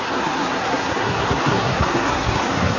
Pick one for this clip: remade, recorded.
remade